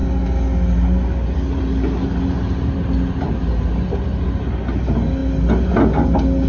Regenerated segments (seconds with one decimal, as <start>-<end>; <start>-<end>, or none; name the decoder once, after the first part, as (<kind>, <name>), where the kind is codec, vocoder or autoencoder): none